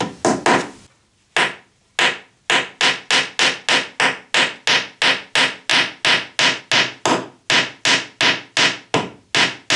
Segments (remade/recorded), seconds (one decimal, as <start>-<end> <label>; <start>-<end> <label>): 0.0-9.8 recorded